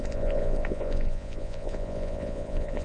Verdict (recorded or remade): remade